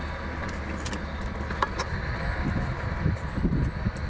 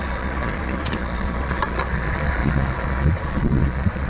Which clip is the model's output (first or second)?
second